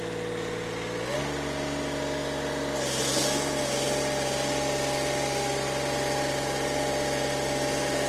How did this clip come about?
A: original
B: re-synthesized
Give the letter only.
A